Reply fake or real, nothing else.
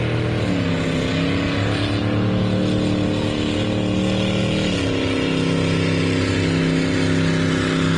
real